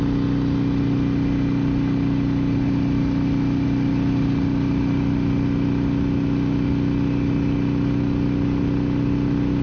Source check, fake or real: real